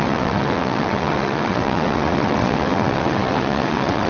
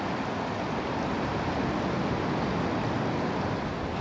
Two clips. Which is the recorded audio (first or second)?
second